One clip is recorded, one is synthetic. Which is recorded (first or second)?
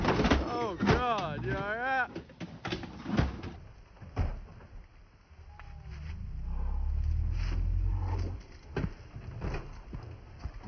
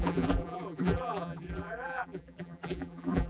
first